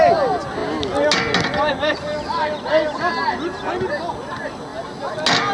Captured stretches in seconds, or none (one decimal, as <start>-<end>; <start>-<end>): 0.0-5.5